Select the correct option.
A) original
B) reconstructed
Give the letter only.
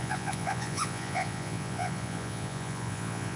B